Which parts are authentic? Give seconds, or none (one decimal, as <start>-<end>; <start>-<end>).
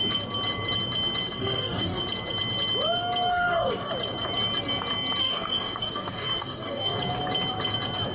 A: 0.0-1.4; 2.0-3.3; 3.9-5.2; 7.0-8.1